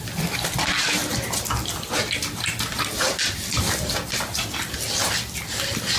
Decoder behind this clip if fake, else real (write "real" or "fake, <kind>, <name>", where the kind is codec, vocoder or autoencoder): real